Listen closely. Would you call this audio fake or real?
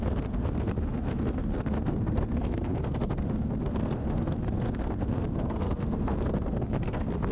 fake